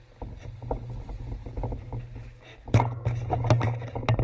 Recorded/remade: recorded